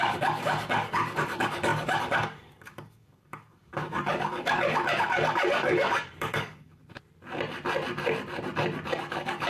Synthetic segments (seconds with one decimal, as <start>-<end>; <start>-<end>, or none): 0.0-6.8; 8.9-9.5